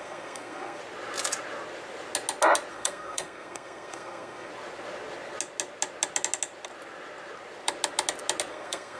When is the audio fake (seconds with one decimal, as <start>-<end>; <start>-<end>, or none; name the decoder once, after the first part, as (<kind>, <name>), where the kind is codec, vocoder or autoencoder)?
0.0-0.8 (codec, SNAC); 2.7-4.5; 8.5-9.0